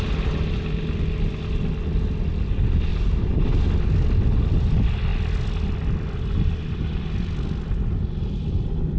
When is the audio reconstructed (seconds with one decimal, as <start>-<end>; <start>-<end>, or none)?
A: 2.9-3.7